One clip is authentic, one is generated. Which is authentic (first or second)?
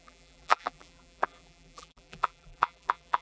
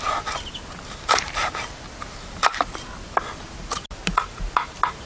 second